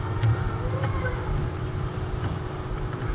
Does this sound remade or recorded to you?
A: recorded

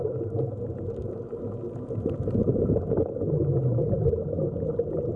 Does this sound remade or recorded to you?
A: recorded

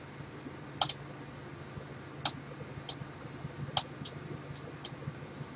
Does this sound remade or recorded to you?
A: recorded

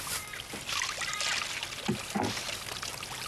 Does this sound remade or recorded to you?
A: recorded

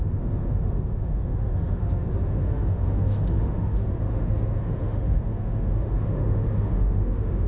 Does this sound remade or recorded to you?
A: remade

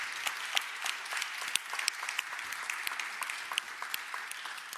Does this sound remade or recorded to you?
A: recorded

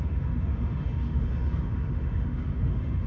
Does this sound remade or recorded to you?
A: remade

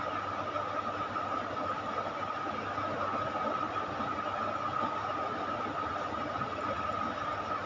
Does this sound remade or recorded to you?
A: recorded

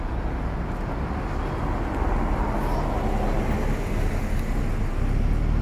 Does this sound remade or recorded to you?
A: recorded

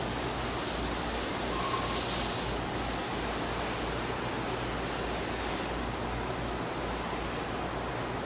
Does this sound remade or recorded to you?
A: recorded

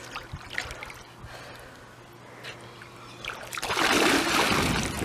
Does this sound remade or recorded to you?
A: recorded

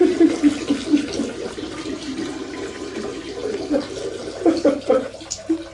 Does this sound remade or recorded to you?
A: recorded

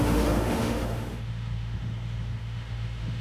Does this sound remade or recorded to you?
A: remade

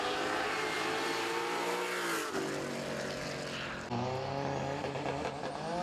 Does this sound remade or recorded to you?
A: recorded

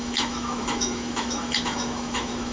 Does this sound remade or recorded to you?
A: remade